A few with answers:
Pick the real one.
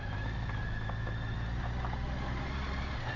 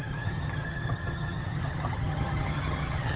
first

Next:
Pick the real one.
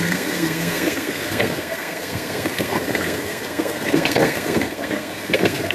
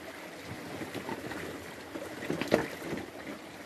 second